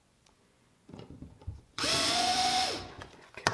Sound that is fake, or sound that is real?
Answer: fake